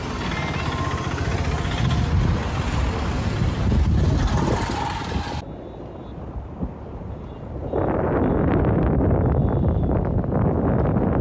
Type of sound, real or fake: real